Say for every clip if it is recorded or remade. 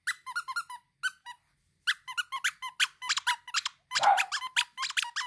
recorded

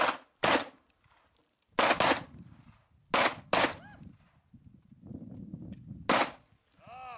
recorded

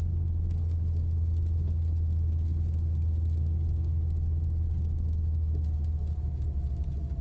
recorded